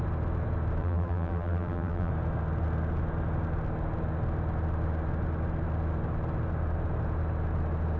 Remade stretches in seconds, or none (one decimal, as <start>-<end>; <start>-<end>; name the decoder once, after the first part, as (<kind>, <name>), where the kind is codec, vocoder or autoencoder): 0.8-2.1 (vocoder, BigVGAN v2)